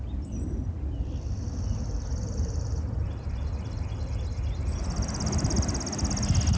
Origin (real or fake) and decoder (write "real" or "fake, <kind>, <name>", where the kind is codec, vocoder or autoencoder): real